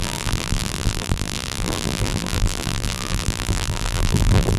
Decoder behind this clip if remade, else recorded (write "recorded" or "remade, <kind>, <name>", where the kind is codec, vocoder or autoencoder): remade, vocoder, BigVGAN v2